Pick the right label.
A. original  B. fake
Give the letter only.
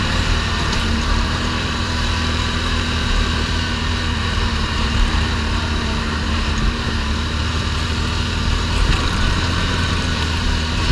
B